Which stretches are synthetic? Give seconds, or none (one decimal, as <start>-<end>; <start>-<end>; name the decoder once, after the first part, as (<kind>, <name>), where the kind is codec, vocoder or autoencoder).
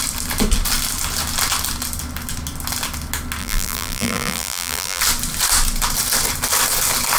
3.4-5.0 (vocoder, BigVGAN v2)